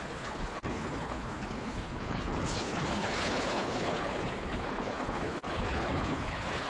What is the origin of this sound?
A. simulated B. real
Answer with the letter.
A